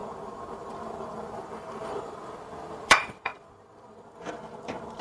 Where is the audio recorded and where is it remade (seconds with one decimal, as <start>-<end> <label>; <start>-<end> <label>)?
0.0-5.0 remade